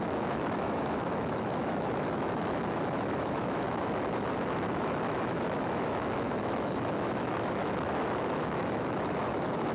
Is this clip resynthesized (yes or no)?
yes